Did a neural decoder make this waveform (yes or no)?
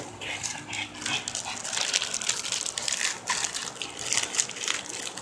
no